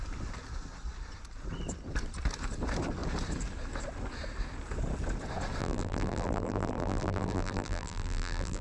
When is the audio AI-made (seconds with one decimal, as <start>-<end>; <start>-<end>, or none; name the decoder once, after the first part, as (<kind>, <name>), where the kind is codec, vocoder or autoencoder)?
5.6-8.6 (vocoder, BigVGAN v2)